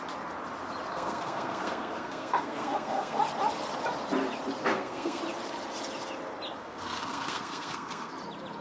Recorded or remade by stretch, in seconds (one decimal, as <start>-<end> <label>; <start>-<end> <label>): 0.0-0.9 recorded; 0.9-3.2 remade; 3.2-4.6 recorded; 4.6-5.2 remade; 5.2-6.6 recorded; 6.6-8.1 remade; 8.1-8.6 recorded